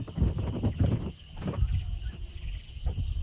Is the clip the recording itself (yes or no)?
yes